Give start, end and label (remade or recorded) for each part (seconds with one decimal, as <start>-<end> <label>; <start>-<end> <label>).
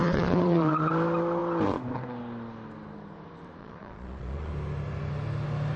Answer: 0.0-0.9 remade; 0.9-3.6 recorded; 3.6-4.5 remade; 4.5-5.8 recorded